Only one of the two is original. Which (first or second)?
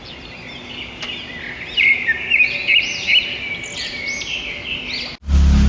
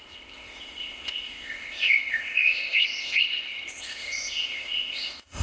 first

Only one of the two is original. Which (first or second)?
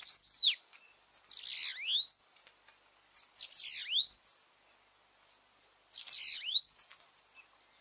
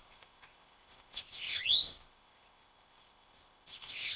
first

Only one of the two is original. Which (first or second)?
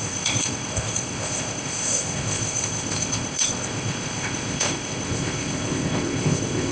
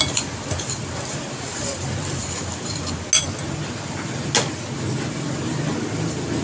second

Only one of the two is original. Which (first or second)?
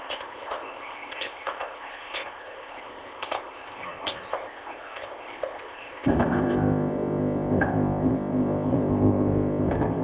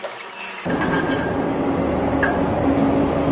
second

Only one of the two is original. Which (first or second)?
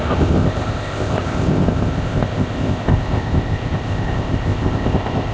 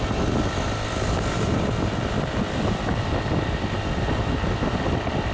second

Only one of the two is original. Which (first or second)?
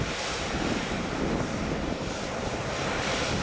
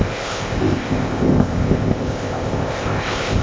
first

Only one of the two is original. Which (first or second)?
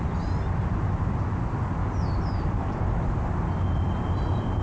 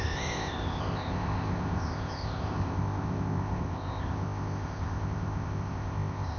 first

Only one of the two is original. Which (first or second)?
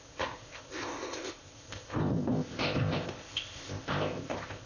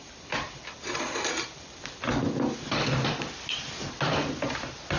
second